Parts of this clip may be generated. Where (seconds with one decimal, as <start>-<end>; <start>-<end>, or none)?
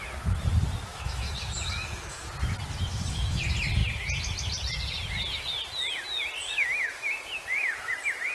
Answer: 0.9-2.3; 2.9-3.4; 6.4-7.1